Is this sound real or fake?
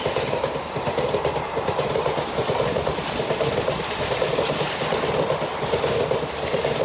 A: real